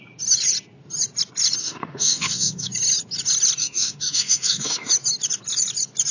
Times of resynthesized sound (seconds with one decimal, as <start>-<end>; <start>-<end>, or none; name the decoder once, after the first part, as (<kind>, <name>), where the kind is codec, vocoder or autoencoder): 1.6-2.7 (autoencoder, DAC-VAE); 3.6-4.9